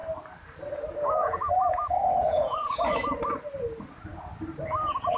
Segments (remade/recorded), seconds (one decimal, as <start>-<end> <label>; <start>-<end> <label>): 0.0-1.2 recorded; 1.2-2.9 remade; 2.9-5.2 recorded

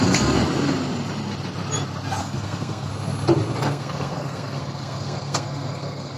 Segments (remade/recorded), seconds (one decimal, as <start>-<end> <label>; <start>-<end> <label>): 0.0-0.4 remade; 0.4-2.2 recorded; 2.2-2.9 remade; 2.9-3.6 recorded; 3.6-6.2 remade

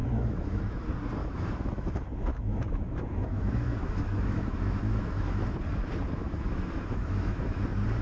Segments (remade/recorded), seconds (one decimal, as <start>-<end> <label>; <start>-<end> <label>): 0.0-0.6 remade; 0.6-1.2 recorded; 1.2-5.4 remade; 5.4-6.2 recorded; 6.2-7.6 remade; 7.6-8.0 recorded

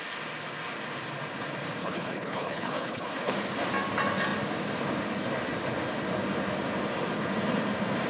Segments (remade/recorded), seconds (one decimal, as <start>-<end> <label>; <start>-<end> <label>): 0.0-1.8 recorded; 1.8-3.3 remade; 3.3-8.1 recorded

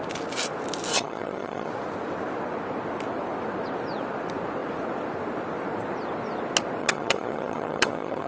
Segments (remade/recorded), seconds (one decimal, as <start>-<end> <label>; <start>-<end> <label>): 0.0-0.9 recorded; 0.9-1.7 remade; 1.7-6.8 recorded; 6.8-8.3 remade

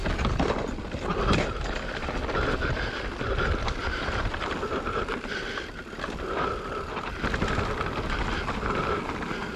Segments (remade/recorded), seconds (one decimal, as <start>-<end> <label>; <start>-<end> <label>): 0.0-3.8 recorded; 3.8-4.7 remade; 4.7-9.6 recorded

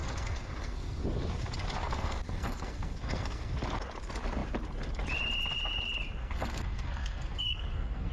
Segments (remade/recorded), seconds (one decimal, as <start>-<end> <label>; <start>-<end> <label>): 0.0-1.0 remade; 1.0-1.8 recorded; 1.8-3.5 remade; 3.5-6.2 recorded; 6.2-8.1 remade

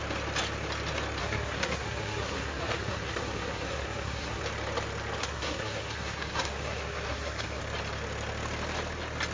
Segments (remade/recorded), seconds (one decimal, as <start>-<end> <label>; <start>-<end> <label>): 0.0-1.2 recorded; 1.2-4.4 remade; 4.4-5.2 recorded; 5.2-7.6 remade; 7.6-9.3 recorded